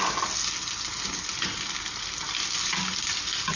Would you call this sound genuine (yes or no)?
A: yes